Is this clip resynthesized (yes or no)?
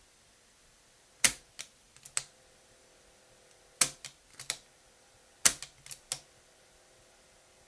no